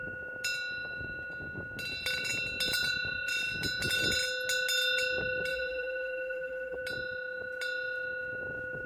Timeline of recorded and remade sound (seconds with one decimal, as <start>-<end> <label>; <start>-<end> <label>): 0.0-5.5 recorded; 5.5-6.8 remade; 6.8-8.9 recorded